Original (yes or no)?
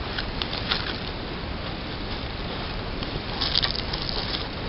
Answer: yes